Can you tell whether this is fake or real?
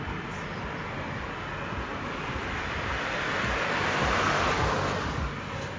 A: real